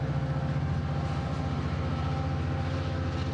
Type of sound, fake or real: real